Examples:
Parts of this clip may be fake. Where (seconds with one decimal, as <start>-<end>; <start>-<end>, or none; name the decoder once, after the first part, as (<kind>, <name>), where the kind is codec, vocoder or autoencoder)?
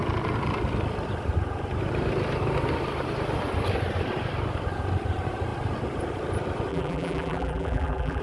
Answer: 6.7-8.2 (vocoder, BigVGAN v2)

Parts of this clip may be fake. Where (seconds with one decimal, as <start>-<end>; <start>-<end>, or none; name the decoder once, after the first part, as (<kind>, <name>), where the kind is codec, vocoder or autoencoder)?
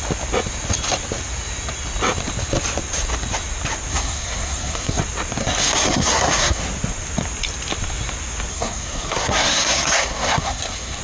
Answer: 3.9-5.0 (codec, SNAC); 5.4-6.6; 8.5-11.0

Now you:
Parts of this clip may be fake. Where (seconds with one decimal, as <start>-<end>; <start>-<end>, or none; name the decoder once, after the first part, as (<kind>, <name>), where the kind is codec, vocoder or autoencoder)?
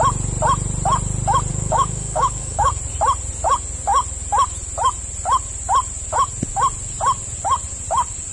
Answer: 1.5-2.7 (codec, DAC)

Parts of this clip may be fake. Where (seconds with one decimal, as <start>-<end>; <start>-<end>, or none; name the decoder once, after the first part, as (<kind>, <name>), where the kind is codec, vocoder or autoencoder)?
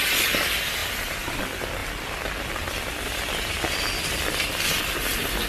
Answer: 0.8-1.4 (vocoder, BigVGAN v2); 1.8-4.8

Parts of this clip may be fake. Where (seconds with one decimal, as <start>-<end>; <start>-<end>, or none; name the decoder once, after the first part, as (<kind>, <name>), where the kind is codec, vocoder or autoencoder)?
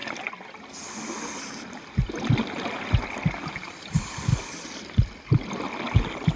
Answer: none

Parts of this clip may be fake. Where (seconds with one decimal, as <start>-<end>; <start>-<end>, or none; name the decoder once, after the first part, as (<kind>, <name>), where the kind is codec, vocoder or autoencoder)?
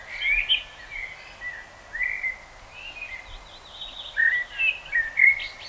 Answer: none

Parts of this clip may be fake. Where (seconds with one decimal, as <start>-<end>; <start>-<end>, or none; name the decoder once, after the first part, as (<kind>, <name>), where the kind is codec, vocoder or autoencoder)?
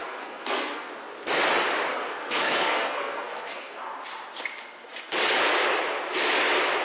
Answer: 0.0-0.9 (codec, SNAC); 1.9-3.8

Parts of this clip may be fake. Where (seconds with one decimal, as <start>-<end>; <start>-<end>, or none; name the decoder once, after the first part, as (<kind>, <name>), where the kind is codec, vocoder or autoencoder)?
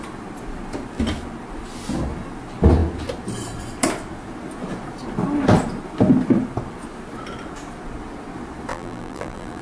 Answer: 8.7-9.6 (vocoder, BigVGAN v2)